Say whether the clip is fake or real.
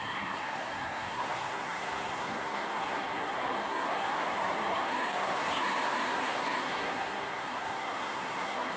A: fake